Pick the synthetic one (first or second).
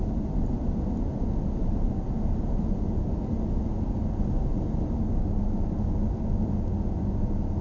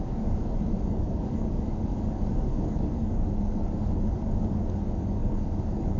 second